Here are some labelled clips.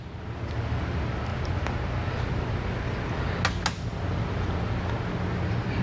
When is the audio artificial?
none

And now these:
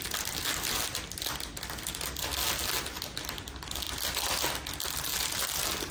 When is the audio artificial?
none

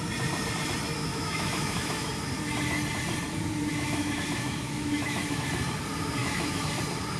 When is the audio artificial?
1.1-2.1 (autoencoder, DAC-VAE); 3.7-5.5; 6.2-6.8

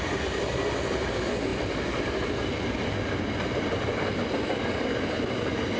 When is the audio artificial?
none

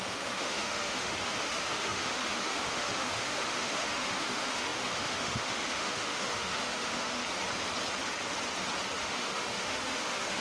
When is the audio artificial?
0.0-7.2 (autoencoder, DAC-VAE); 9.0-10.4